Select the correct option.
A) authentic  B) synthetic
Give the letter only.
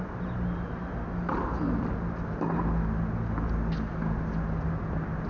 A